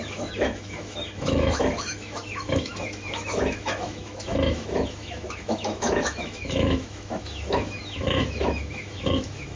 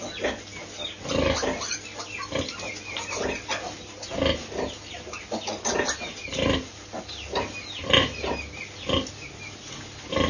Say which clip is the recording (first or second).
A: second